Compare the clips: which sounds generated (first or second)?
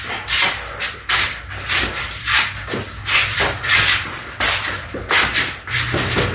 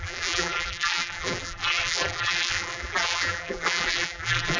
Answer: second